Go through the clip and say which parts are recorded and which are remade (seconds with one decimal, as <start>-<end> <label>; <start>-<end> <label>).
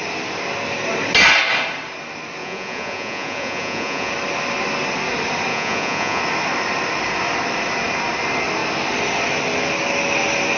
0.0-2.4 recorded; 2.4-4.1 remade; 4.1-5.5 recorded; 5.5-6.2 remade; 6.2-10.6 recorded